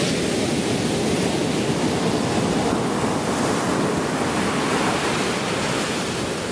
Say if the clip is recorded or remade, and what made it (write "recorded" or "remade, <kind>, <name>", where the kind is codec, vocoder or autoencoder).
recorded